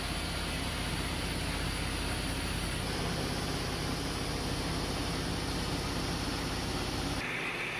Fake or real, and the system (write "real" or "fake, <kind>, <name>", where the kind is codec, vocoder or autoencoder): real